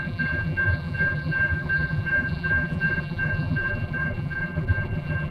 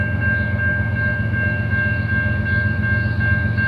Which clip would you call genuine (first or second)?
second